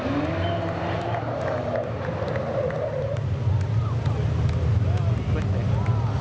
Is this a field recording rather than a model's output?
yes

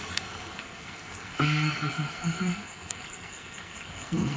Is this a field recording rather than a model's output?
no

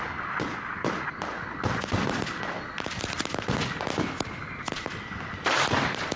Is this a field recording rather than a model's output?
yes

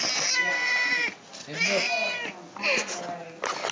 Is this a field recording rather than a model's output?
yes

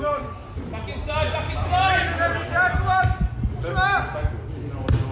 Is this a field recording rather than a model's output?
yes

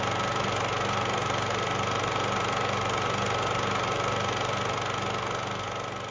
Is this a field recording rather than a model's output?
yes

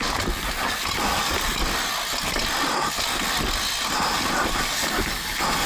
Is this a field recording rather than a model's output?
yes